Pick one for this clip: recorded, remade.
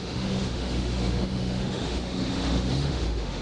remade